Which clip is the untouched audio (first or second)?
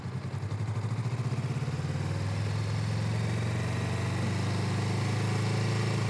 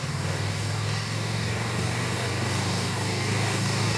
first